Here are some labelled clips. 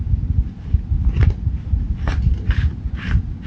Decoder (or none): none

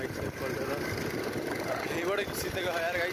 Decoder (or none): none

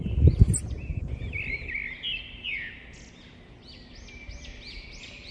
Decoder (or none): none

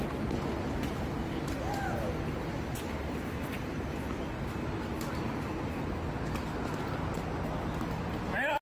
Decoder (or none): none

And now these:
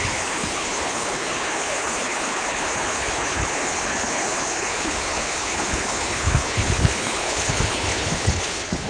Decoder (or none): codec, HILCodec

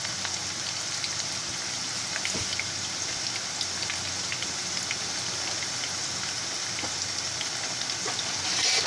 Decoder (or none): none